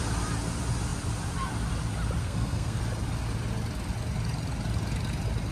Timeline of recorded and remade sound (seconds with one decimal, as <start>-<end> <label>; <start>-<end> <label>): 0.0-2.2 recorded; 2.2-2.8 remade; 2.8-5.5 recorded

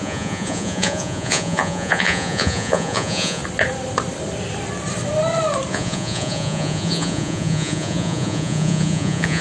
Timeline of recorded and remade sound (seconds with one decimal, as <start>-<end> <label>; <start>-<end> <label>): 0.0-3.4 remade; 3.4-5.7 recorded; 5.7-9.4 remade

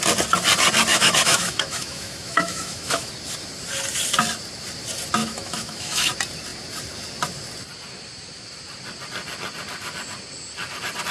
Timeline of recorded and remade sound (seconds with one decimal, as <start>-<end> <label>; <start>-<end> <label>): 0.0-0.9 recorded; 0.9-3.1 remade; 3.1-5.2 recorded; 5.2-6.1 remade; 6.1-11.1 recorded